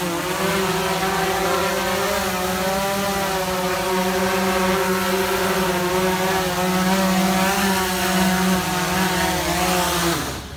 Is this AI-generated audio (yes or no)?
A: no